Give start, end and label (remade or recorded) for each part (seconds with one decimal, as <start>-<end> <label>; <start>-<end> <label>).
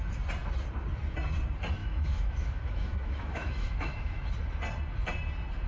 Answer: 0.0-1.8 recorded; 1.8-4.3 remade; 4.3-5.7 recorded